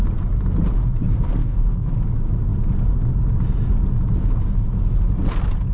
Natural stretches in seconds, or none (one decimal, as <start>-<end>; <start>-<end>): 0.0-1.4; 1.9-5.7